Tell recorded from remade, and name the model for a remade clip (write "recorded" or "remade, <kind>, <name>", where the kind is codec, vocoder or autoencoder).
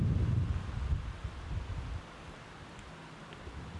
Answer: recorded